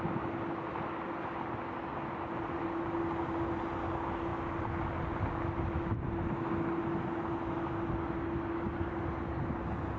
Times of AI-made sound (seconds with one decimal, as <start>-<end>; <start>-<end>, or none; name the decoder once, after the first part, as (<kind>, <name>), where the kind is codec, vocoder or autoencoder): none